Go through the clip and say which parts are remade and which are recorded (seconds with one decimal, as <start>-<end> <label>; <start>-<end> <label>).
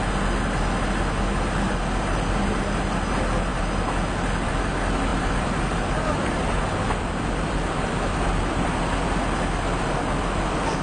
0.0-5.1 recorded; 5.1-9.2 remade; 9.2-10.8 recorded